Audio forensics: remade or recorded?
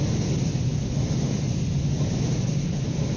recorded